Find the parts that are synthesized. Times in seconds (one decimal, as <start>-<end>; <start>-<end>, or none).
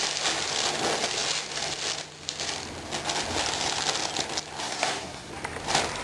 4.6-5.3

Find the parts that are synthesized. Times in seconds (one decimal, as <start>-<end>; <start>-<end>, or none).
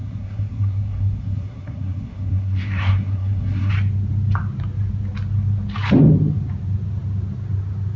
0.0-3.7